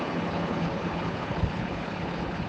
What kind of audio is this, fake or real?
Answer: fake